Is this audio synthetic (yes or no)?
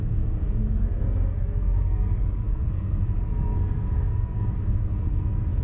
yes